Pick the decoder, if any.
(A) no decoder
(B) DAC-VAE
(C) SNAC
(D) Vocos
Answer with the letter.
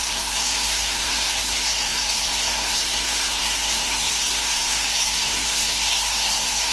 C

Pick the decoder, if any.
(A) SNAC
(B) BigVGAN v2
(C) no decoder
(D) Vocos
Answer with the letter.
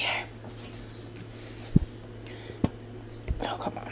C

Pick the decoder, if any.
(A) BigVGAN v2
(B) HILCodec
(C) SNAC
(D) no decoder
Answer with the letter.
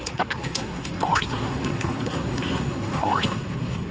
C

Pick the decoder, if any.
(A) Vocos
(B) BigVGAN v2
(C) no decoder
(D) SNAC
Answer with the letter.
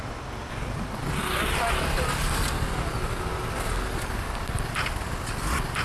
C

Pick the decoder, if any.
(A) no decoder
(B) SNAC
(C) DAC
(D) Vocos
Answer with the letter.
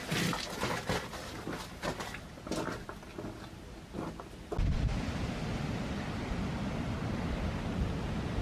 A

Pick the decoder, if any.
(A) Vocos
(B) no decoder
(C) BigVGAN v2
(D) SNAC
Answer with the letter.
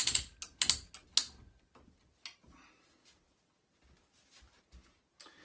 B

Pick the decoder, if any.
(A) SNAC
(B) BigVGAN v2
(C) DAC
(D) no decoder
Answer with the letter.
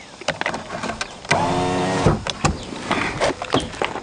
D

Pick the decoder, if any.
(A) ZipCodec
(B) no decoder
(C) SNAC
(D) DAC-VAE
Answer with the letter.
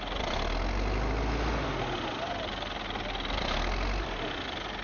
B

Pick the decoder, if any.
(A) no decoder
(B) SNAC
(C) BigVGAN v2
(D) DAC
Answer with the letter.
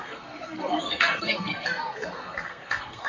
B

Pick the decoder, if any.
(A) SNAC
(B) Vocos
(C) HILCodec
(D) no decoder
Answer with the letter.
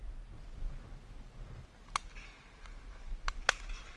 D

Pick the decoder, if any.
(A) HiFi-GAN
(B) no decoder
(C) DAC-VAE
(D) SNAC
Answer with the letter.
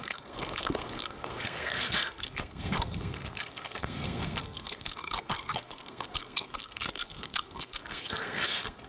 D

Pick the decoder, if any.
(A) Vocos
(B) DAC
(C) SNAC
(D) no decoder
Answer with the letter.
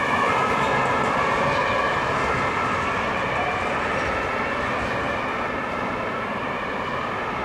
D